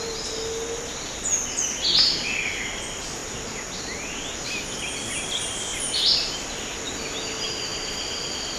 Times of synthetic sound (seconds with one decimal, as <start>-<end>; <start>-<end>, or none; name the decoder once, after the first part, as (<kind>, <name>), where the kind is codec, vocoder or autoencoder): none